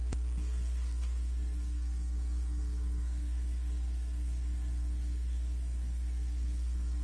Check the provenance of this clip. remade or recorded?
remade